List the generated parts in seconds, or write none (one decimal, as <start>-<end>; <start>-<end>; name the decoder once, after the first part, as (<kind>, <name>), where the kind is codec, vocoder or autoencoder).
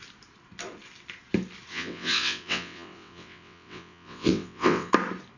1.7-4.9 (vocoder, WaveNeXt)